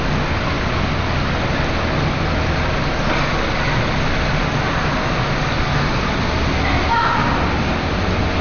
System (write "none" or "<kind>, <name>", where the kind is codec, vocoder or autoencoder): none